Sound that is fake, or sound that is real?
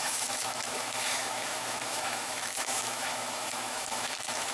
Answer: fake